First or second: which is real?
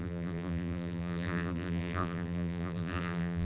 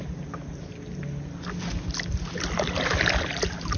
second